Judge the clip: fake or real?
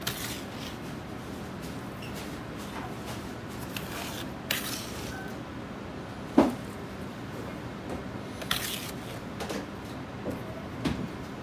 real